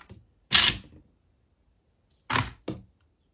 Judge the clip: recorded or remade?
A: recorded